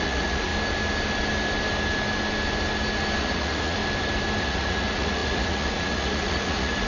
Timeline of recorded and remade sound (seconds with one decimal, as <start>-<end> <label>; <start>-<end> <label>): 0.0-0.5 remade; 0.5-3.2 recorded; 3.2-3.8 remade; 3.8-4.4 recorded; 4.4-6.9 remade